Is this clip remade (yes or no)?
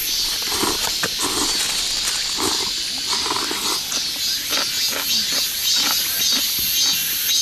no